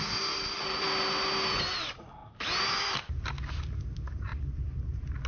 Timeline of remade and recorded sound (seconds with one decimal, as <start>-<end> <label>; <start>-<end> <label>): 0.0-5.3 recorded